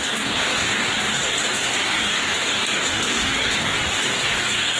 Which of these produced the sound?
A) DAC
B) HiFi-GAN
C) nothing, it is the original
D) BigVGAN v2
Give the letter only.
A